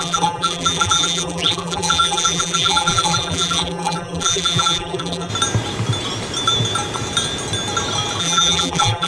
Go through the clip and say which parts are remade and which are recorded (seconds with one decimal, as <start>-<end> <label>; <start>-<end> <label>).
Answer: 0.0-5.3 remade; 5.3-8.2 recorded; 8.2-9.1 remade